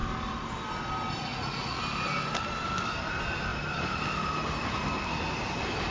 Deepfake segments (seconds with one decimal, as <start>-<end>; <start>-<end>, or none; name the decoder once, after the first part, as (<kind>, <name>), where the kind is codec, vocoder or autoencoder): 1.3-1.8 (vocoder, Vocos)